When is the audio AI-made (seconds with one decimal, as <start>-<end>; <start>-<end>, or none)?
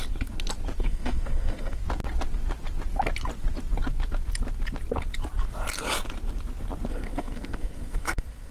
0.8-1.8; 6.9-8.5